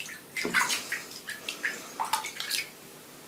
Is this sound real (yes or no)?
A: yes